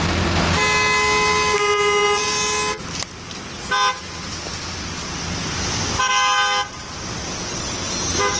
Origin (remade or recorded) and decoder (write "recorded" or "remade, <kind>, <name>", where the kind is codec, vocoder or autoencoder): recorded